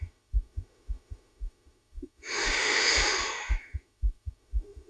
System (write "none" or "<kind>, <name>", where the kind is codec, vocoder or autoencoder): autoencoder, DAC-VAE